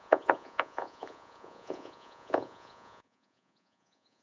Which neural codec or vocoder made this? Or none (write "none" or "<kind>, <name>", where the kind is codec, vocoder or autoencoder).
vocoder, Vocos